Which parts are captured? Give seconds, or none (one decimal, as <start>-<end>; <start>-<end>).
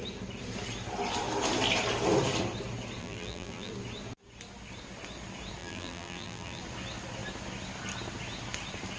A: 0.0-3.0; 3.7-5.6; 6.6-9.0